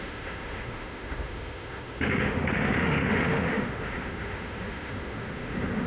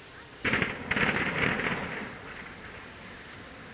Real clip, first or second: second